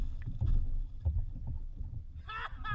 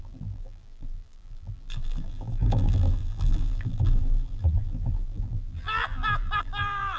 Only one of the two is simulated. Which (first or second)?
second